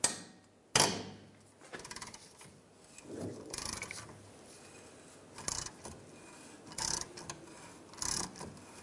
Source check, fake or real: real